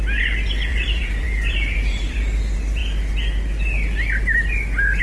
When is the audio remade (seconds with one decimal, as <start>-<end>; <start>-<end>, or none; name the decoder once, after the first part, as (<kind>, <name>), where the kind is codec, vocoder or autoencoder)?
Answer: 0.7-2.4 (vocoder, BigVGAN v2)